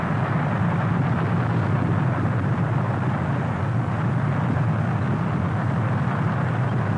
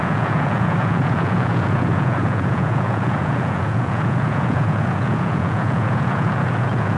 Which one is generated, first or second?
second